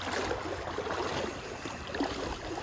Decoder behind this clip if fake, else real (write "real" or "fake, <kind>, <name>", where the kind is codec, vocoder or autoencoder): fake, vocoder, BigVGAN v2